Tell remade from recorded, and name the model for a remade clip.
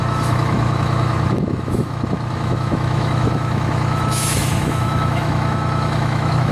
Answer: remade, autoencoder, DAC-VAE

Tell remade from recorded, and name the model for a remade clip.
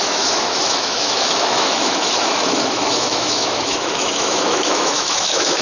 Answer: remade, autoencoder, DAC-VAE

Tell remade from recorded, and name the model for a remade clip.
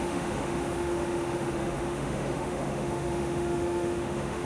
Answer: remade, autoencoder, DAC-VAE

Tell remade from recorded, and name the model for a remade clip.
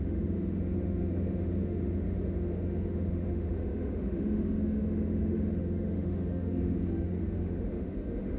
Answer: remade, autoencoder, DAC-VAE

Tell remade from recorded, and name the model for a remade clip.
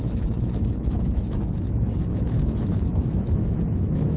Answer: remade, autoencoder, DAC-VAE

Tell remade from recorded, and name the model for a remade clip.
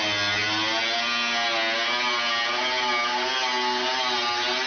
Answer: recorded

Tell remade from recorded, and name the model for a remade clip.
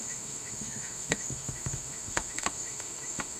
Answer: remade, autoencoder, DAC-VAE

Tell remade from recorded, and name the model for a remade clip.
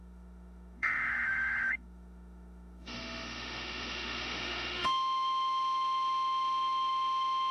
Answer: remade, autoencoder, DAC-VAE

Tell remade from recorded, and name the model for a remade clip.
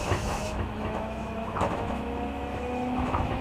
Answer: remade, autoencoder, DAC-VAE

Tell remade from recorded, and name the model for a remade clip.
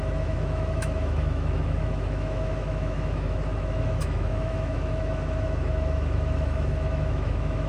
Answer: remade, autoencoder, DAC-VAE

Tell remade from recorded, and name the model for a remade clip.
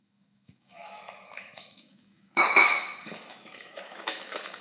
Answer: remade, autoencoder, DAC-VAE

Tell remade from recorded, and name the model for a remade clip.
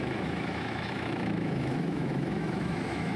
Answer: remade, autoencoder, DAC-VAE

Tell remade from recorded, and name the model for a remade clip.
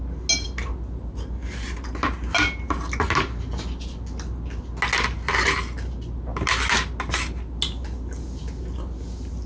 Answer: recorded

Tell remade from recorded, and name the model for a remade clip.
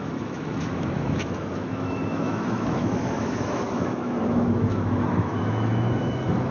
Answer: remade, autoencoder, DAC-VAE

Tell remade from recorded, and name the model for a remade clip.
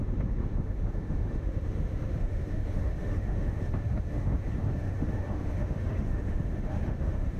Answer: remade, autoencoder, DAC-VAE